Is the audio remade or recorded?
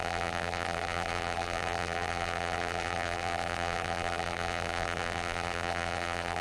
remade